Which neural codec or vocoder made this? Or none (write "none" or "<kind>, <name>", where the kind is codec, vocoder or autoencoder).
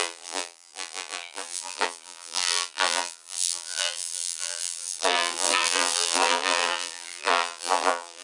vocoder, BigVGAN v2